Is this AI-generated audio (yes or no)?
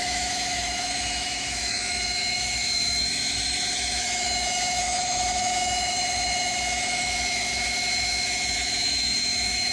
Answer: yes